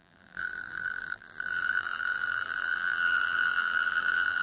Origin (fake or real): fake